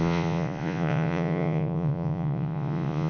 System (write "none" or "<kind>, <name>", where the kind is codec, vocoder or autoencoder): vocoder, Vocos